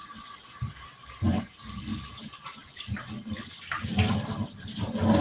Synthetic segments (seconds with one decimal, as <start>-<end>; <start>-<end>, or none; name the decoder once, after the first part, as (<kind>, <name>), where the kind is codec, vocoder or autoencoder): none